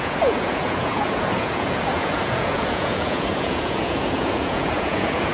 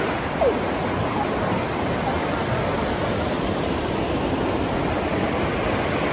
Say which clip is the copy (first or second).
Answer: first